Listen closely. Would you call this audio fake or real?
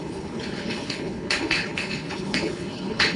fake